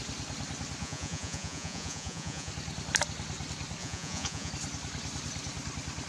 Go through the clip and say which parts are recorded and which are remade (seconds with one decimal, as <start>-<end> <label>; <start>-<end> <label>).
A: 0.0-0.8 recorded; 0.8-2.5 remade; 2.5-3.8 recorded; 3.8-4.5 remade; 4.5-6.1 recorded